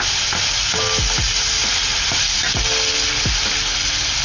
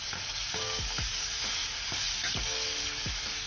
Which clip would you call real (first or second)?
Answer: first